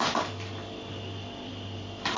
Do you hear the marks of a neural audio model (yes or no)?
no